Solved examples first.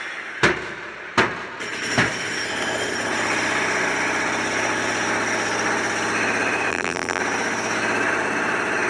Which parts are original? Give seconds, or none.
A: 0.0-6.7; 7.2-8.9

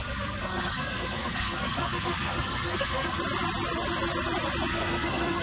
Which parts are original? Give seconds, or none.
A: 3.2-4.7

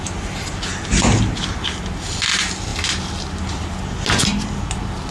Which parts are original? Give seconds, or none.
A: 0.0-5.1

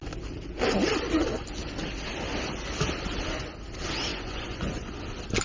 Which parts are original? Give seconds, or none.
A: 0.0-4.1; 5.0-5.4

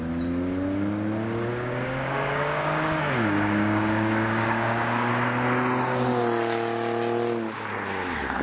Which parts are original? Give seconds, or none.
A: 0.0-1.5; 5.1-8.4